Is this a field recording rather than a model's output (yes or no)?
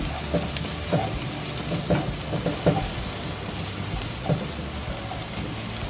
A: yes